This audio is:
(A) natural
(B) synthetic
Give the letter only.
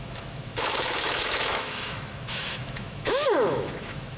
B